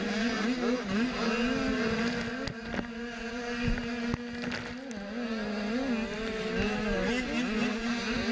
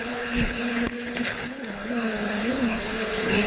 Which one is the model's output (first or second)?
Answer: second